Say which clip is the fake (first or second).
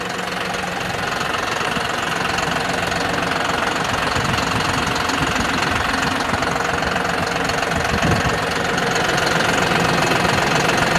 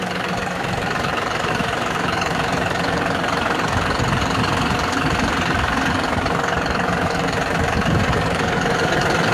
second